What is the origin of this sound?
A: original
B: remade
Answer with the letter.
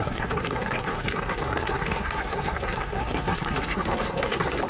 B